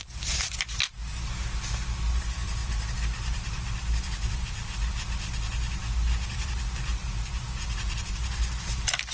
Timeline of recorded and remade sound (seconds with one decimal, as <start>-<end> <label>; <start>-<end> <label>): 0.0-9.1 recorded